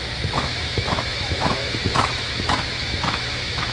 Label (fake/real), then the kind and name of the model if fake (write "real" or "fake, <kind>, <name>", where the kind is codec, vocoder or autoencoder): fake, autoencoder, DAC-VAE